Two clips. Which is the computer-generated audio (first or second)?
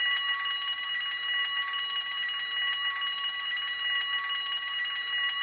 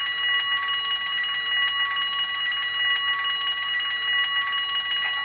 first